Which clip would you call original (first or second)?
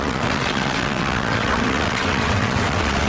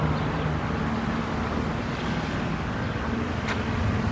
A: second